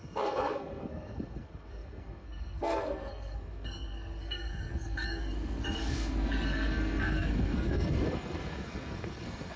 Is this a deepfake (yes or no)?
yes